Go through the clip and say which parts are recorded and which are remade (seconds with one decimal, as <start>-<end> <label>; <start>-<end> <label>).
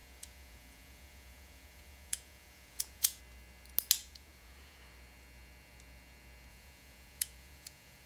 0.0-3.2 remade; 3.2-4.0 recorded; 4.0-4.8 remade; 4.8-6.5 recorded; 6.5-8.1 remade